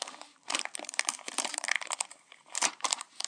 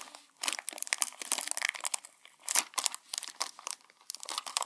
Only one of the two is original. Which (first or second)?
second